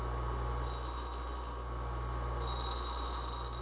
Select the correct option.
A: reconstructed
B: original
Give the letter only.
B